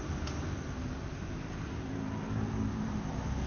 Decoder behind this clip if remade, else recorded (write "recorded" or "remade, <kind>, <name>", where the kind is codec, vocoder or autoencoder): remade, vocoder, BigVGAN v2